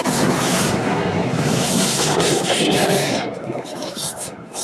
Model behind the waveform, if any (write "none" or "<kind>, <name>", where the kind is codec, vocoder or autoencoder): codec, SNAC